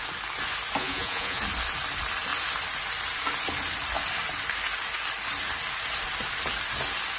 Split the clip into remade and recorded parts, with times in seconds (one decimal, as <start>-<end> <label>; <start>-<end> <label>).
0.0-0.8 recorded; 0.8-1.4 remade; 1.4-7.2 recorded